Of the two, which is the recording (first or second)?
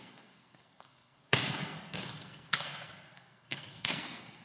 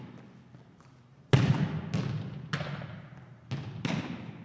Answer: second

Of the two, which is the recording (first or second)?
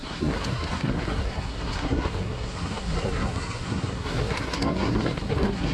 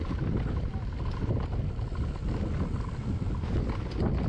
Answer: second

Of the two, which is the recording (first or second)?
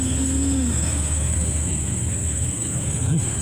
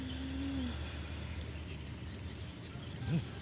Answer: second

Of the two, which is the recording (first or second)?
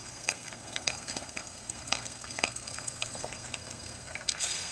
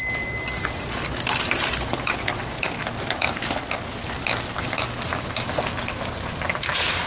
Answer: second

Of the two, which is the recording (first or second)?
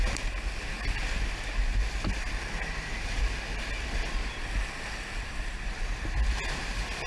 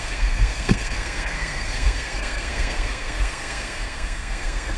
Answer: first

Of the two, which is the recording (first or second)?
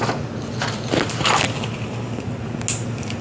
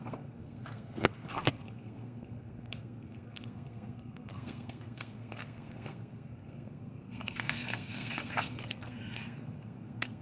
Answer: first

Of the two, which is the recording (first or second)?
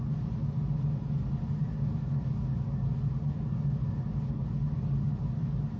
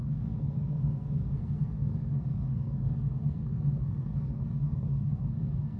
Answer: first